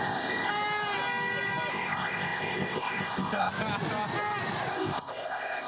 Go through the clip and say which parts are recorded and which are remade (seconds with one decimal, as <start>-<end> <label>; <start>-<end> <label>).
0.0-0.5 remade; 0.5-1.7 recorded; 1.7-3.5 remade; 3.5-4.7 recorded; 4.7-5.7 remade